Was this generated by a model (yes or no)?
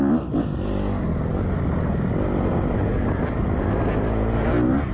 no